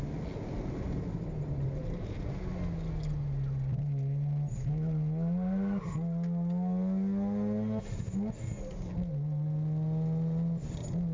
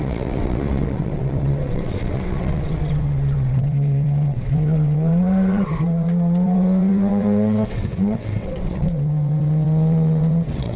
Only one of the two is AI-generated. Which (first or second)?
second